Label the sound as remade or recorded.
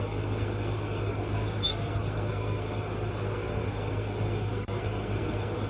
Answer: remade